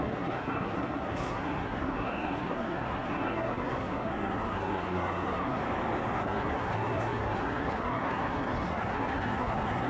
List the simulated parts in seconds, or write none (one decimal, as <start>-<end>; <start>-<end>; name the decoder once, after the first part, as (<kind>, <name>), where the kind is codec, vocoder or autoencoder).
0.0-5.6 (codec, SNAC); 6.2-9.9